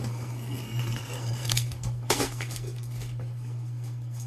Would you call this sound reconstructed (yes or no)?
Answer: yes